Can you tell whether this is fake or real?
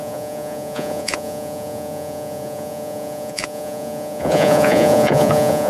fake